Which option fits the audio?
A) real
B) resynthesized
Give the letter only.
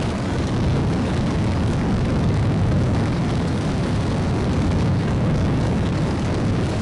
B